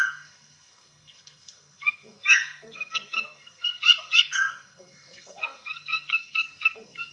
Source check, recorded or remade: remade